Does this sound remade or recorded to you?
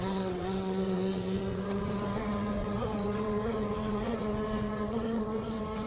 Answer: remade